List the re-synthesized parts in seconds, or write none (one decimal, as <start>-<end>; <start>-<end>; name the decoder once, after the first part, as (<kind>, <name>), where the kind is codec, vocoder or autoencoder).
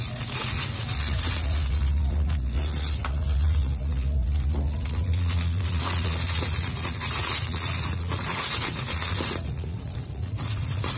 0.0-11.0 (vocoder, Vocos)